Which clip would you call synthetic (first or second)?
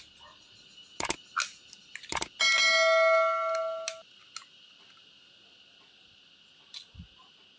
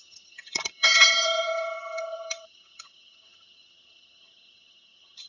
second